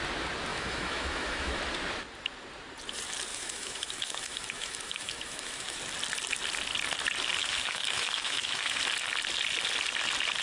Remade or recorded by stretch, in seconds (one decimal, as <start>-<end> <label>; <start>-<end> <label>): 0.0-0.5 recorded; 0.5-1.6 remade; 1.6-3.3 recorded; 3.3-5.8 remade; 5.8-7.4 recorded; 7.4-8.8 remade; 8.8-10.4 recorded